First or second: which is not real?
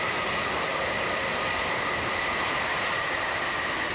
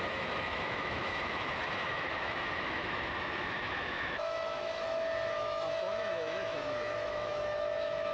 second